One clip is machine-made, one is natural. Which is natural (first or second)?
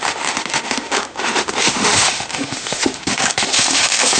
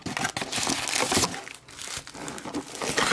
second